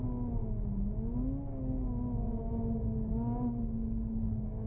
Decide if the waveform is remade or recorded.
recorded